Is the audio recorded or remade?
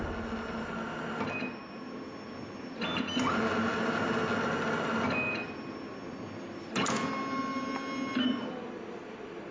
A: recorded